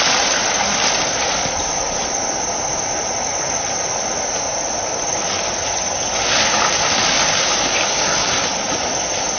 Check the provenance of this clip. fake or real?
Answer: real